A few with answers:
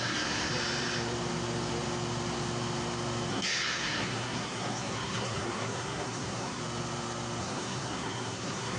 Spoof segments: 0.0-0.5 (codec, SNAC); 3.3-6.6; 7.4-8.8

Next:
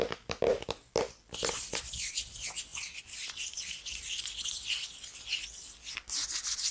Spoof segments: none

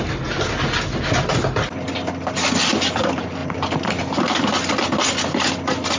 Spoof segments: none